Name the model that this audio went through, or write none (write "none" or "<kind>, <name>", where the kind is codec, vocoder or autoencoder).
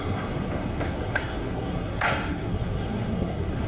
codec, SNAC